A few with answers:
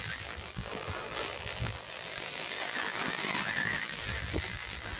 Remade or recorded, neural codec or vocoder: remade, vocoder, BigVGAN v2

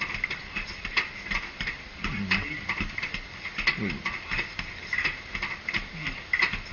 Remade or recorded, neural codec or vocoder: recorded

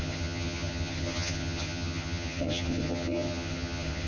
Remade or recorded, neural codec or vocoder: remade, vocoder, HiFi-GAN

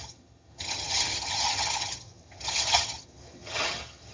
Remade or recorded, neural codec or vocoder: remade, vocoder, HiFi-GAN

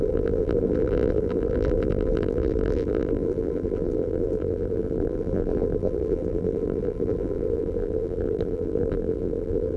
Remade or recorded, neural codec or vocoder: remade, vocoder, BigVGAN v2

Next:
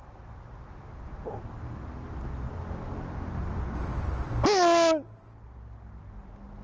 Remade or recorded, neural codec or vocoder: recorded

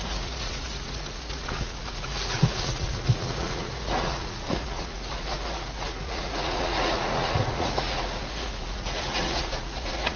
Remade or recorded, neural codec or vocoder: remade, vocoder, Vocos